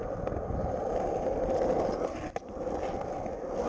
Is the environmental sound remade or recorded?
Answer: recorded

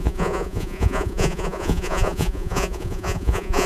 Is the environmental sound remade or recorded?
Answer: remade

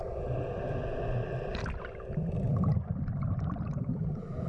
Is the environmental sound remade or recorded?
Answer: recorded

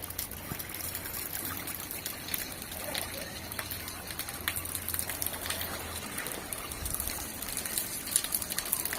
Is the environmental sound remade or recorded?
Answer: recorded